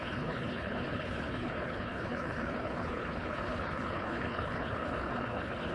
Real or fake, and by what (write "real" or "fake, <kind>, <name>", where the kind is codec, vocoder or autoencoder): fake, codec, HILCodec